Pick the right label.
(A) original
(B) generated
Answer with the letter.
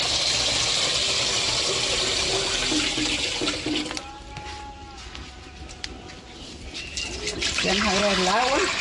A